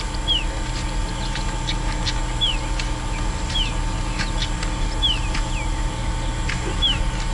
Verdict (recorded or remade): recorded